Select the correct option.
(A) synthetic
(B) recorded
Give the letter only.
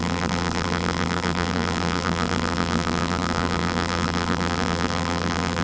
A